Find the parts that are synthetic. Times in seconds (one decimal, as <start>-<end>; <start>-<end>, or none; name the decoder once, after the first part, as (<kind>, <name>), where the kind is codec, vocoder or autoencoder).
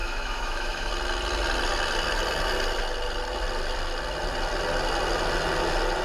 0.0-0.9 (autoencoder, DAC-VAE)